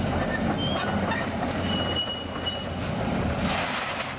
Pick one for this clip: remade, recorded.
recorded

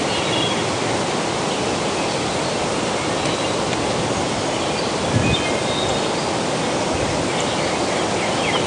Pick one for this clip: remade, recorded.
recorded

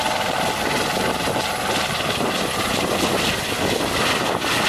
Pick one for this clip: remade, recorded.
recorded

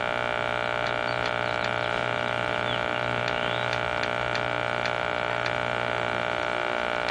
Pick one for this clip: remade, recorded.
recorded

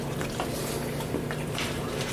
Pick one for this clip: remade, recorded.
recorded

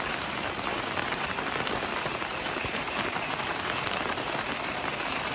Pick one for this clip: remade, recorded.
remade